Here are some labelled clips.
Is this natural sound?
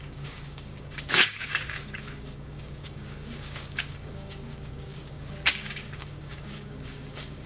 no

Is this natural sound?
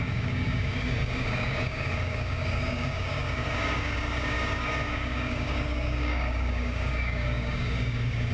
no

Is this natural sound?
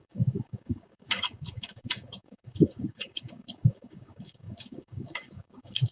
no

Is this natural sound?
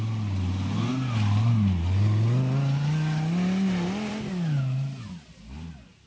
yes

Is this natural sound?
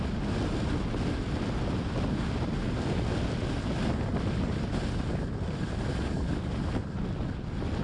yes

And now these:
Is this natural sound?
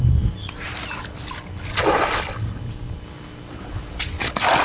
yes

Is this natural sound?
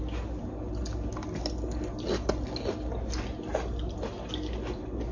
yes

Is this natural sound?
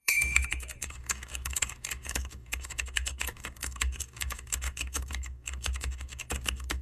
no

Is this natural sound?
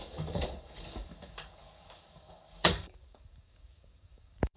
no